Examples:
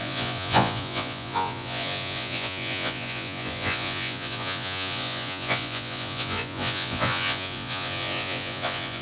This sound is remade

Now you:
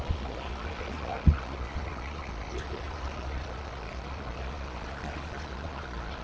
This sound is remade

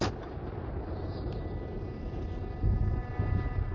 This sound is recorded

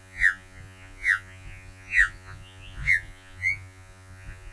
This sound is remade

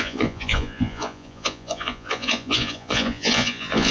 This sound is remade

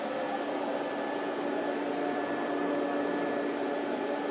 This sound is recorded